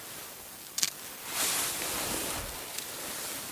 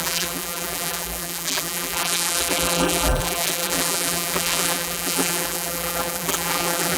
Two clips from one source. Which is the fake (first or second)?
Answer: second